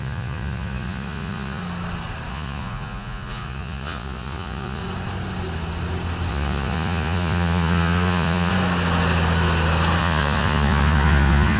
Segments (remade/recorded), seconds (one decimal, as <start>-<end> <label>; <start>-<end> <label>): 0.0-1.6 remade; 1.6-2.3 recorded; 2.3-4.8 remade; 4.8-6.3 recorded; 6.3-8.5 remade; 8.5-10.0 recorded; 10.0-11.6 remade